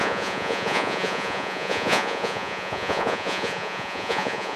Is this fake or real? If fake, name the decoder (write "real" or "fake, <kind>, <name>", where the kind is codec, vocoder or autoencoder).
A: fake, vocoder, Vocos